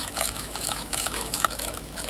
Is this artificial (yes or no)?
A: yes